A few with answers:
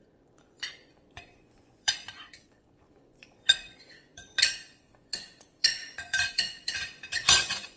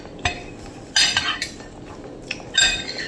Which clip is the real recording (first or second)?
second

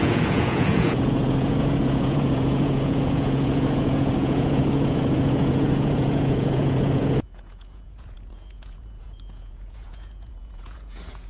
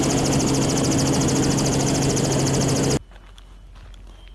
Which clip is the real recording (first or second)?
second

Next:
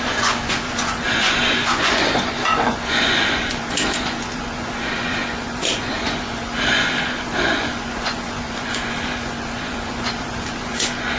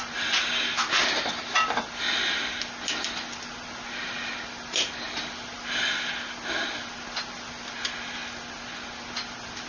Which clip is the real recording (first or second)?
second